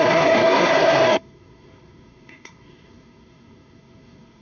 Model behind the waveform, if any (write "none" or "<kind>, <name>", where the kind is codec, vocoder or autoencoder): codec, SNAC